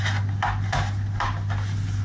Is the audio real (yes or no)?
yes